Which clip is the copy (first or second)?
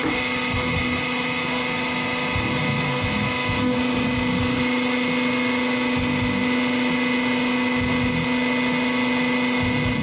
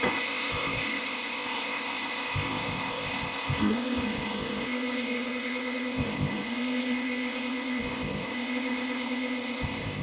second